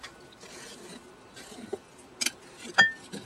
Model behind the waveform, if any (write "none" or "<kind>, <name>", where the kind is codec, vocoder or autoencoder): none